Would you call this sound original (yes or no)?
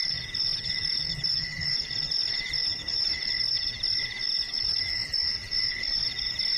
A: yes